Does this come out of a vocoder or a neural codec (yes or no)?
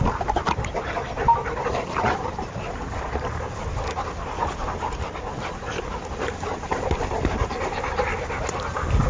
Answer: no